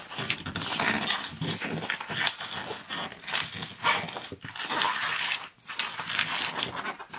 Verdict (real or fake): real